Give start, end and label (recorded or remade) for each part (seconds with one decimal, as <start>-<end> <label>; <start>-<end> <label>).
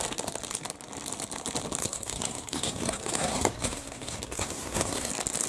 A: 0.0-1.8 recorded; 1.8-5.1 remade; 5.1-5.5 recorded